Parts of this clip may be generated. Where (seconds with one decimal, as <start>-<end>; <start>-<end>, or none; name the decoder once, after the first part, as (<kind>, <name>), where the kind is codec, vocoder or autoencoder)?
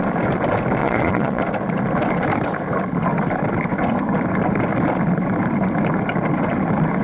0.8-1.4 (vocoder, Vocos)